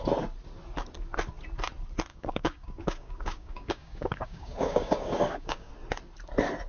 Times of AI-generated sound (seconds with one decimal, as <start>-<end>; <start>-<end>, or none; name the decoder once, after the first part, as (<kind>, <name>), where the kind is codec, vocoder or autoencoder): 2.1-5.7 (codec, DAC)